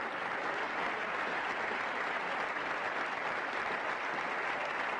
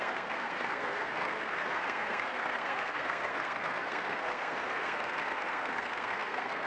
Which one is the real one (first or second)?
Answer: first